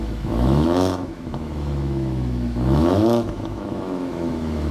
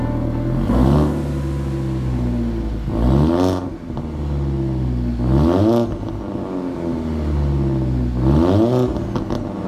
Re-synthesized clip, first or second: first